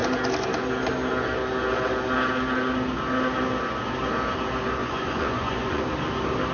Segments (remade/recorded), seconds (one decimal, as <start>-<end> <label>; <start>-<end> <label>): 0.0-4.8 recorded; 4.8-5.8 remade; 5.8-6.5 recorded

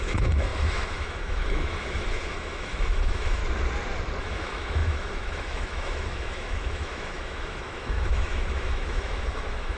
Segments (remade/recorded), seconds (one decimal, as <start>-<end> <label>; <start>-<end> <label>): 0.0-3.4 remade; 3.4-4.2 recorded; 4.2-9.8 remade